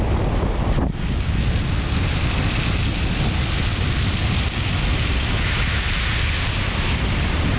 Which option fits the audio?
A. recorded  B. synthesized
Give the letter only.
A